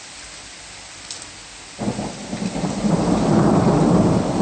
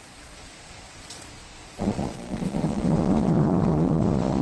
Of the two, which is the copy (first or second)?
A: second